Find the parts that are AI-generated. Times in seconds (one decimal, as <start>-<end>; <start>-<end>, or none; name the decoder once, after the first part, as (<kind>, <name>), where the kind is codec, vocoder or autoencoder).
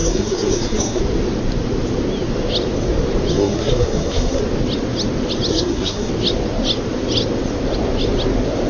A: 0.0-1.0 (codec, SNAC); 3.3-4.4; 5.5-6.1